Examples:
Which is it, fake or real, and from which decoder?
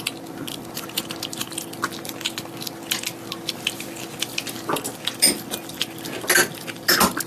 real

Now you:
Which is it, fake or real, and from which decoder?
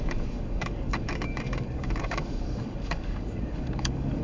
fake, codec, DAC